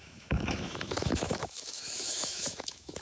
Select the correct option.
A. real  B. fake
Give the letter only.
B